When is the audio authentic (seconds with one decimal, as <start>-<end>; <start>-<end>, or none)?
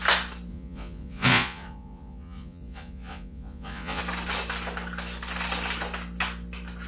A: 0.0-0.5; 4.0-6.9